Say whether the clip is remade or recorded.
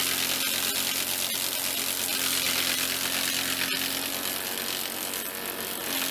recorded